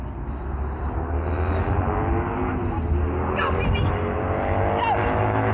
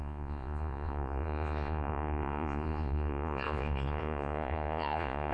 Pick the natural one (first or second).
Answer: first